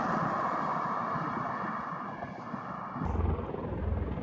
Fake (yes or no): no